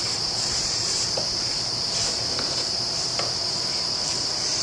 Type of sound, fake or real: fake